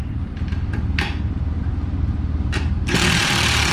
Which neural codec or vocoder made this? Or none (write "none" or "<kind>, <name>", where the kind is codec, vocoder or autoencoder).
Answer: vocoder, BigVGAN v2